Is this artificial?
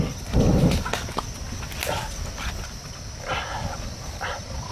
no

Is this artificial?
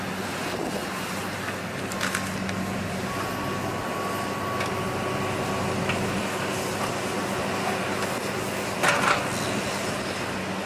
no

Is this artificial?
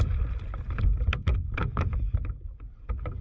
no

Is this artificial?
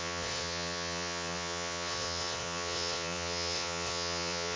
yes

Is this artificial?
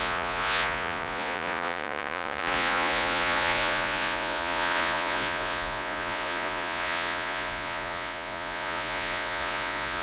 yes